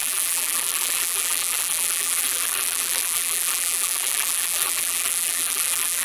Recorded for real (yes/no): no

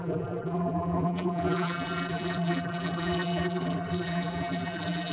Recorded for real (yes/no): no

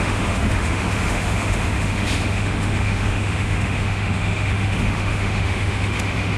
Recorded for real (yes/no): no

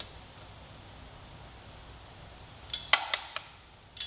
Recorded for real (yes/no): yes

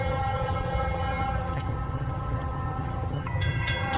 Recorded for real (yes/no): no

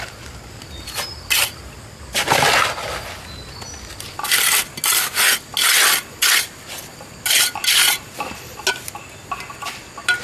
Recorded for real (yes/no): yes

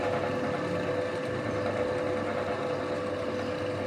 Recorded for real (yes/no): yes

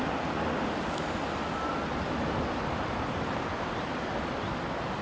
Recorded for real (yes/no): yes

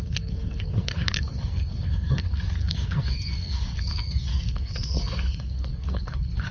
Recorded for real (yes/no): no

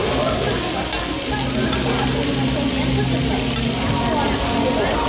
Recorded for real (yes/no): yes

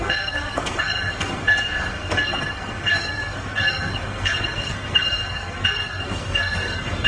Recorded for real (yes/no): no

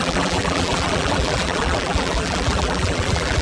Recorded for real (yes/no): no